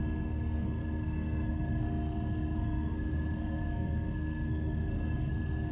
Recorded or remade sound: remade